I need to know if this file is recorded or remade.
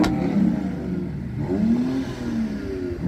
recorded